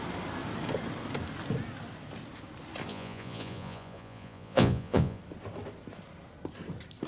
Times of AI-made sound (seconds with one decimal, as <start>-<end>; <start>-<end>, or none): 2.9-5.2